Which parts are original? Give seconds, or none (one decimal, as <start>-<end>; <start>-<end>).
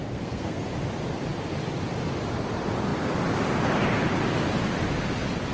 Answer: 0.6-5.5